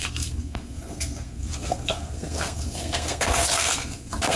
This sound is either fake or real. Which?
fake